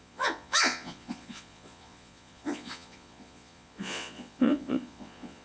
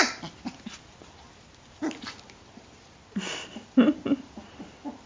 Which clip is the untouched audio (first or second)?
second